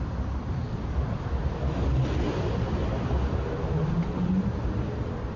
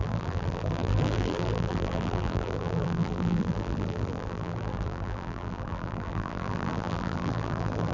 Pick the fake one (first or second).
second